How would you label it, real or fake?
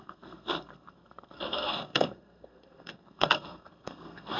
fake